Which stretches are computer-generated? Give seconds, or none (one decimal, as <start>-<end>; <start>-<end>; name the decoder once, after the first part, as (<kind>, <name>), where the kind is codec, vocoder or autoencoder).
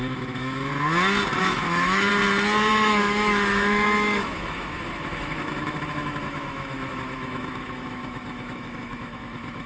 0.0-0.7 (autoencoder, DAC-VAE); 1.4-2.1; 2.7-9.7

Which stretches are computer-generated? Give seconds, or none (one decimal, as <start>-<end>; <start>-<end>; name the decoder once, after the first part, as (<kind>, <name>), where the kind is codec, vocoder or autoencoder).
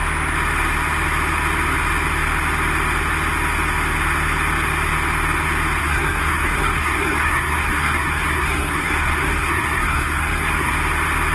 5.8-10.7 (codec, SNAC)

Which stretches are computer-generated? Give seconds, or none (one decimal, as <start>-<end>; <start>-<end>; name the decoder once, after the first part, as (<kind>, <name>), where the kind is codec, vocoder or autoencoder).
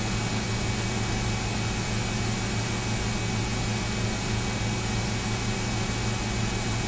none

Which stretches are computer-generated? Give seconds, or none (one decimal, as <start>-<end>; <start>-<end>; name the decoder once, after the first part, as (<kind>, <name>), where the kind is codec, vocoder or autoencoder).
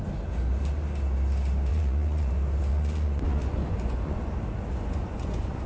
1.7-2.3 (vocoder, Vocos); 2.7-4.3; 4.7-5.7